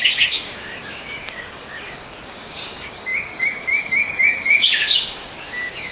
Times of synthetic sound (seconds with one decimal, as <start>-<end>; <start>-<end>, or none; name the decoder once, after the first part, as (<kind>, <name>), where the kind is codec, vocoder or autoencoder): 0.0-5.9 (codec, DAC)